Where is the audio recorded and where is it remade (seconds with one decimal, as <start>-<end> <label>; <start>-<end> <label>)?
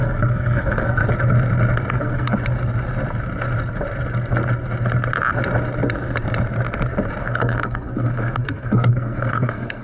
0.0-1.0 remade; 1.0-1.9 recorded; 1.9-2.4 remade; 2.4-7.2 recorded; 7.2-9.8 remade